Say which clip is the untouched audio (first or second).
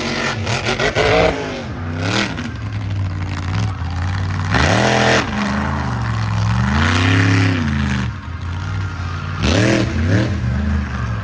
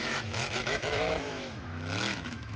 first